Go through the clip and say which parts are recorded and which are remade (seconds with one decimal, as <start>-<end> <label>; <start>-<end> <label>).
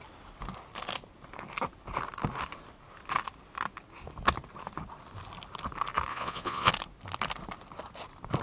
0.0-6.1 recorded; 6.1-6.7 remade; 6.7-8.4 recorded